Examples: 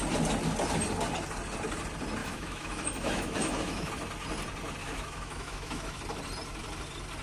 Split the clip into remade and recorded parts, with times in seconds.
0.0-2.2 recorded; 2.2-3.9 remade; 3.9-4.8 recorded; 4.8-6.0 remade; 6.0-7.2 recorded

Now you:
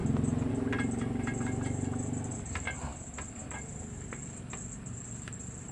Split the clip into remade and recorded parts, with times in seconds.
0.0-5.7 recorded

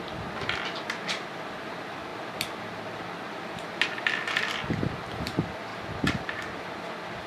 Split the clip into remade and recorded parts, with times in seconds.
0.0-7.3 recorded